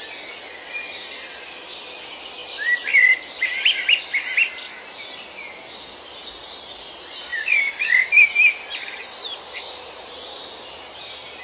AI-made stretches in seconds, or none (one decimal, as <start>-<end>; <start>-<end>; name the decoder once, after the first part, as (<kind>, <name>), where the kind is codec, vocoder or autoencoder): 7.3-11.4 (vocoder, BigVGAN v2)